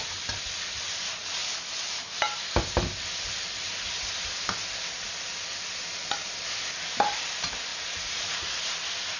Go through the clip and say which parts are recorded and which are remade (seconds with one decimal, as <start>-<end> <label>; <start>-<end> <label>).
0.0-7.7 recorded; 7.7-8.6 remade; 8.6-9.2 recorded